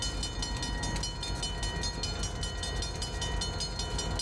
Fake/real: real